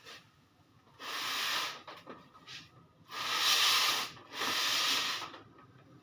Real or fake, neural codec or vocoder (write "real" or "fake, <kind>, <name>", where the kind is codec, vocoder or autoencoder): real